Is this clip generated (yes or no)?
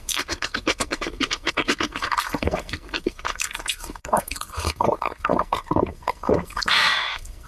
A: yes